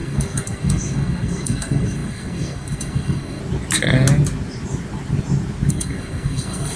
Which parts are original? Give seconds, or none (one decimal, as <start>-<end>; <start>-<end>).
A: 3.4-5.7